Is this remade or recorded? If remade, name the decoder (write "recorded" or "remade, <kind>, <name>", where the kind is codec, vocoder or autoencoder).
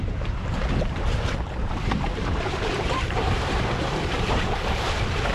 remade, vocoder, BigVGAN v2